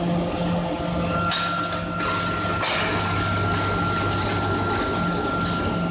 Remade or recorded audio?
recorded